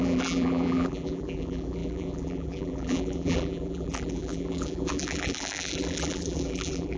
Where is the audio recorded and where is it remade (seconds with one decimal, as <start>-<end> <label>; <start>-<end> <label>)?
0.0-7.0 remade